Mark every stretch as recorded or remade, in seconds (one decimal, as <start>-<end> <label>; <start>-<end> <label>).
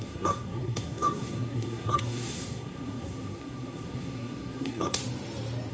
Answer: 0.0-5.0 remade; 5.0-5.7 recorded